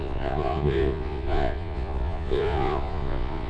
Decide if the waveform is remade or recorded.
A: remade